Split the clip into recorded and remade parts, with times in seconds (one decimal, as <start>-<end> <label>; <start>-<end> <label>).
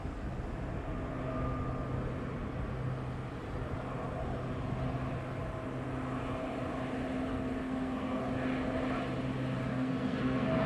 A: 0.0-7.3 recorded; 7.3-8.2 remade; 8.2-9.7 recorded; 9.7-10.7 remade